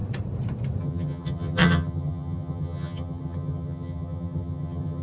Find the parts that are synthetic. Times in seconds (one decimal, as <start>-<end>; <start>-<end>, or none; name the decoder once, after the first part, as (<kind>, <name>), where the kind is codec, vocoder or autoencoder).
0.8-5.0 (vocoder, HiFi-GAN)